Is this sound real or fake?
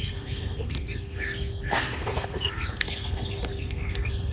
fake